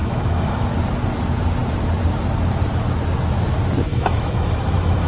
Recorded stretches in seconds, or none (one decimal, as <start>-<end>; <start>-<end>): 0.7-3.9